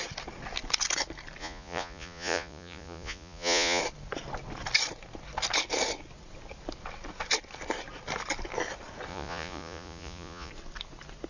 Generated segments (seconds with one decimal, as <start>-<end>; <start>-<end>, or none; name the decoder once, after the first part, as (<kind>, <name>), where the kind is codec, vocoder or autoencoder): 1.4-3.8 (vocoder, Vocos); 9.1-10.5